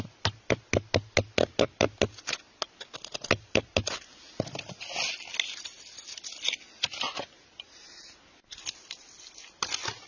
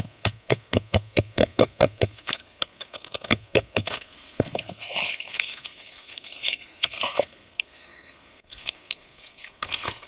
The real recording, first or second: first